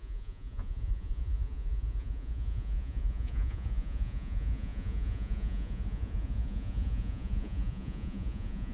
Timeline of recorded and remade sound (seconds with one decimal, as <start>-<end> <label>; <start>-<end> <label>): 0.0-8.7 remade